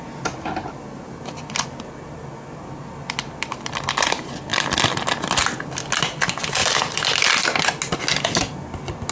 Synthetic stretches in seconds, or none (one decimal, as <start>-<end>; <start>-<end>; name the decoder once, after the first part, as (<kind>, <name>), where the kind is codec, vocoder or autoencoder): none